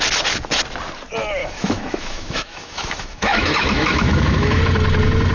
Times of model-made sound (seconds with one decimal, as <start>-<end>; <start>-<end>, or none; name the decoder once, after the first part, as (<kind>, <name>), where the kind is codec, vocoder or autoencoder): 1.4-4.6 (autoencoder, DAC-VAE)